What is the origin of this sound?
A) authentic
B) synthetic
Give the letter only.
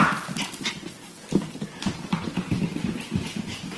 A